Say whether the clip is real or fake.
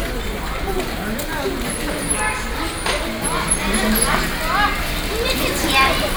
real